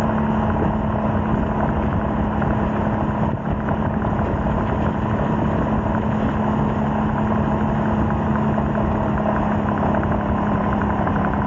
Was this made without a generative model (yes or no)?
yes